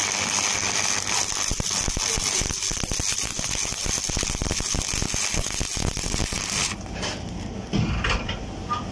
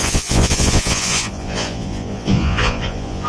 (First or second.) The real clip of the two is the first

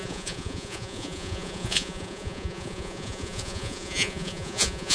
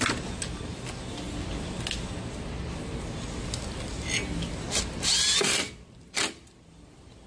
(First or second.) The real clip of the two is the second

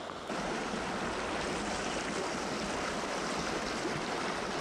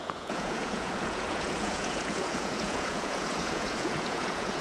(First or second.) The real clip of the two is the first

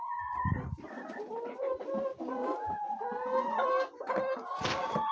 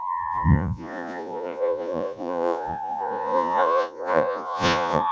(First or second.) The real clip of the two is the first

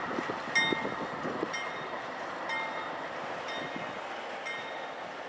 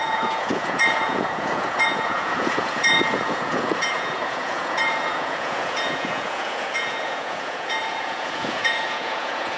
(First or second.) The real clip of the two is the first